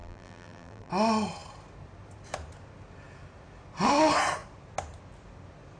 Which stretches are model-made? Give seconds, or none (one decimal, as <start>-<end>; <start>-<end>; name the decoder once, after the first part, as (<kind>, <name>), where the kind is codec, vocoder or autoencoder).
0.0-0.9 (vocoder, BigVGAN v2)